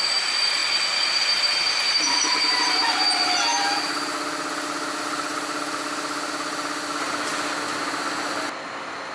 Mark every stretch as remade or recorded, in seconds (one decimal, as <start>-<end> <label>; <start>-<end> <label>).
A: 0.0-3.5 recorded; 3.5-6.3 remade; 6.3-9.1 recorded